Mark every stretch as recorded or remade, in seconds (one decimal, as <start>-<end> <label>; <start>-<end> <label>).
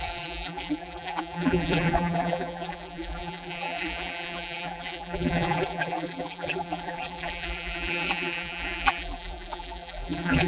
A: 0.0-10.5 remade